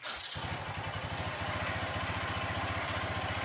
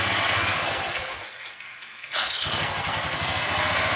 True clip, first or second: first